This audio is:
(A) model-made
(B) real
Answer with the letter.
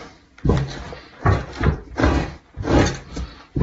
B